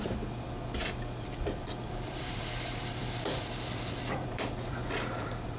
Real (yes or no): no